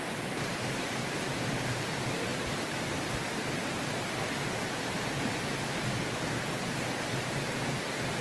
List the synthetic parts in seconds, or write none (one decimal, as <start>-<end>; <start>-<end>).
2.3-5.5